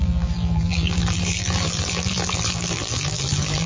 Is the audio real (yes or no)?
no